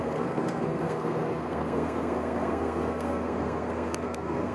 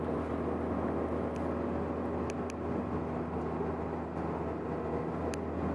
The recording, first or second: second